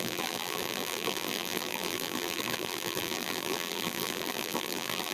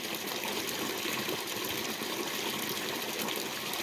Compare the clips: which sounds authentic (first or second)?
second